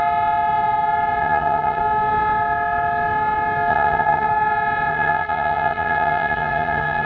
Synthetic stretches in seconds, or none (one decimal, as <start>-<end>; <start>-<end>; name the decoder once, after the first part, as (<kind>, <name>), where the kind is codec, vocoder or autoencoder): 1.2-1.8 (vocoder, HiFi-GAN); 3.7-4.3; 4.9-7.1